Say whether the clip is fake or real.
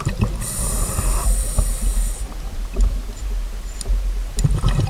real